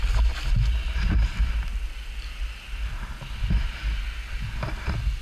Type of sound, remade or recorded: recorded